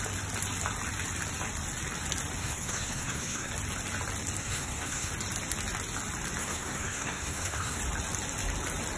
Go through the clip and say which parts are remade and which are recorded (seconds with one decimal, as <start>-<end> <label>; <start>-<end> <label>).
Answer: 0.0-2.4 recorded; 2.4-3.5 remade; 3.5-4.4 recorded; 4.4-5.1 remade; 5.1-6.4 recorded; 6.4-7.8 remade; 7.8-9.0 recorded